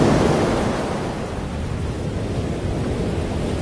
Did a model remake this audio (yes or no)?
no